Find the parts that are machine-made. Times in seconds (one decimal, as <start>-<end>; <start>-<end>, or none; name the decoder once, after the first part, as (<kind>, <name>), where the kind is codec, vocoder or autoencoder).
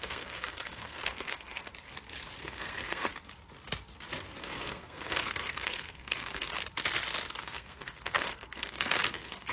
0.0-1.7 (codec, SNAC); 2.4-3.1; 4.4-6.5; 7.4-9.5